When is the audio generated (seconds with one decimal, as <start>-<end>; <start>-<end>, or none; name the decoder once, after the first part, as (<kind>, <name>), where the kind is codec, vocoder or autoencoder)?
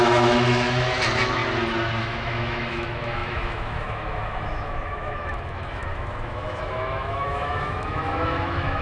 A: 0.0-1.4 (autoencoder, DAC-VAE); 2.0-8.8